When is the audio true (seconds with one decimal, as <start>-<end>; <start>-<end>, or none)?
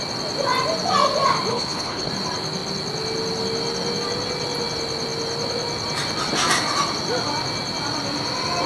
0.0-1.5; 2.1-8.7